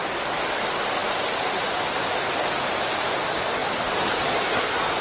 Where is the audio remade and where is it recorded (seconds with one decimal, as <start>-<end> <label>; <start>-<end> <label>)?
0.0-5.0 recorded